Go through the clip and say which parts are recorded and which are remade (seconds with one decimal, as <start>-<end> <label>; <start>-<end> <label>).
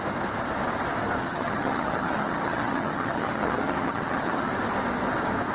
0.0-1.2 recorded; 1.2-4.5 remade; 4.5-5.5 recorded